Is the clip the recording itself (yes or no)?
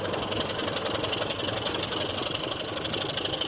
yes